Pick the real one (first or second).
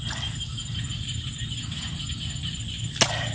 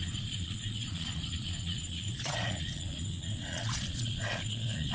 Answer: first